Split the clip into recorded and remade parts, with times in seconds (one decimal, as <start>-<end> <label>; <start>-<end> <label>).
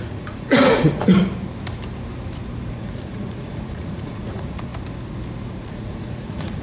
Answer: 0.0-1.1 remade; 1.1-2.7 recorded; 2.7-4.7 remade; 4.7-5.6 recorded; 5.6-6.6 remade